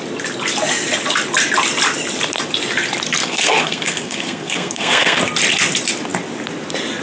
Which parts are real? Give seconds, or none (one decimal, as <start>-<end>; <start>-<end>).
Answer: 0.0-3.2; 5.2-7.0